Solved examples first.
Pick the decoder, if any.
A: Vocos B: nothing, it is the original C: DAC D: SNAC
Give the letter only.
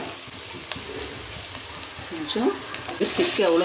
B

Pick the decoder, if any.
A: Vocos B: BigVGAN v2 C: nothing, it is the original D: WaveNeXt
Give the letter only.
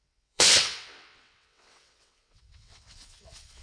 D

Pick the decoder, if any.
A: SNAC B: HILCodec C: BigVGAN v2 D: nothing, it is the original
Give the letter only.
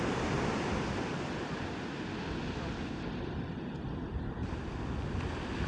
D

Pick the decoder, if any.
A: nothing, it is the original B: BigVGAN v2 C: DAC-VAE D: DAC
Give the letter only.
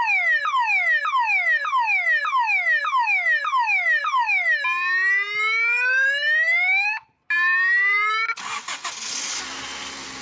A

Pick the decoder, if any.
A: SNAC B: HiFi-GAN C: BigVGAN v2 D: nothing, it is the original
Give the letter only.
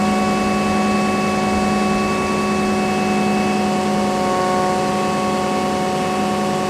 D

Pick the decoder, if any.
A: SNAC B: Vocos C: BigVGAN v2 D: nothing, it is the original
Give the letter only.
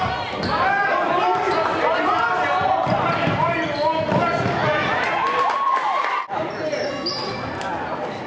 D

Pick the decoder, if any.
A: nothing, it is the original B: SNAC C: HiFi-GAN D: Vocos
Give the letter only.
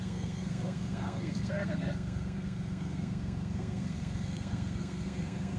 B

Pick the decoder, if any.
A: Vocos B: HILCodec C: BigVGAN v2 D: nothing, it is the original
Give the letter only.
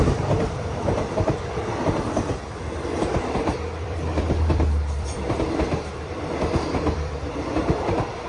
C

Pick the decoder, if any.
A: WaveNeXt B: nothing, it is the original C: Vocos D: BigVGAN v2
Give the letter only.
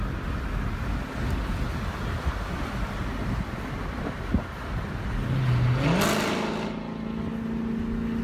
B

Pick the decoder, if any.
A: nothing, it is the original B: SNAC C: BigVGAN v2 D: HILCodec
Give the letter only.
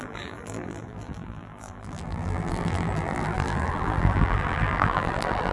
C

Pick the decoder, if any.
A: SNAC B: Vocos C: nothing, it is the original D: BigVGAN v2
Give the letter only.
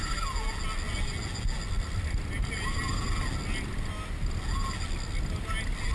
C